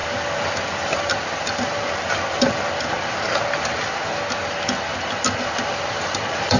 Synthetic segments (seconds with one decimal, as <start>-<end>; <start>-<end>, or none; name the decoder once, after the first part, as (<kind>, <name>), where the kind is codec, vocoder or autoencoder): none